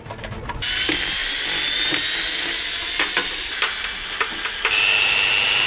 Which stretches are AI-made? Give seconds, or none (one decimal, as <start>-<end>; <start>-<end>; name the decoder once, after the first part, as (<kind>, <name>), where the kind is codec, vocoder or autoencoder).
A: none